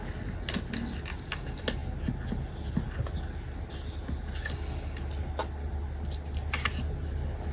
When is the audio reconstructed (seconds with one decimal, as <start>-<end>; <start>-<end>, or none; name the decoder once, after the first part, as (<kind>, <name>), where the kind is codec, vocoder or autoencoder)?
none